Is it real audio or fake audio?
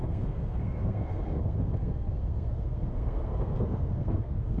fake